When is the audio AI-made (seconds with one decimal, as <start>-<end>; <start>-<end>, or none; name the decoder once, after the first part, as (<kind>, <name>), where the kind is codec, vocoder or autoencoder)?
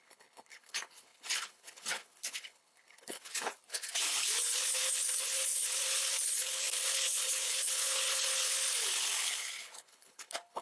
0.0-10.6 (codec, HILCodec)